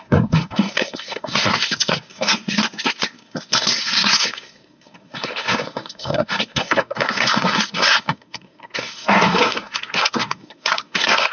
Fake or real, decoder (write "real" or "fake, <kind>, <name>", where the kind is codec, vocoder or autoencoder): fake, codec, SNAC